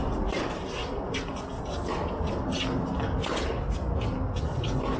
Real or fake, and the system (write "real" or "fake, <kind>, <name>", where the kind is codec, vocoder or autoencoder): real